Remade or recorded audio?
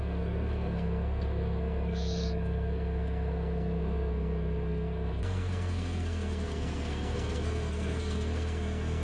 remade